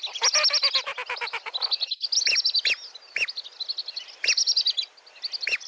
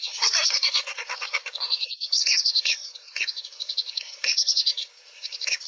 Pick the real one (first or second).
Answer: first